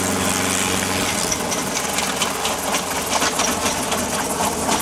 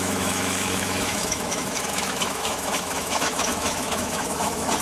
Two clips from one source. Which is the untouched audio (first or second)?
first